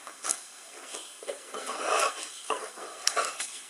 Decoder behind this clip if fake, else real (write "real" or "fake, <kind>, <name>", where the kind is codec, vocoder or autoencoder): fake, codec, SNAC